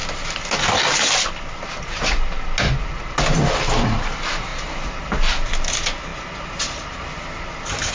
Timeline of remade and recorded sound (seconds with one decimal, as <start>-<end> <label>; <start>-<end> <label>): 0.0-7.9 recorded